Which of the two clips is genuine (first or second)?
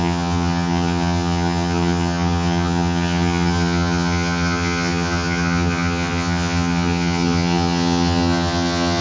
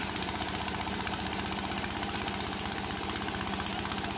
second